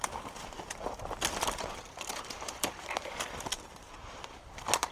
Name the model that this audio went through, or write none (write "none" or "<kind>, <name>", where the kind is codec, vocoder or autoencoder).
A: none